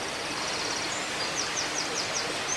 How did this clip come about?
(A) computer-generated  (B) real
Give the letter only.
B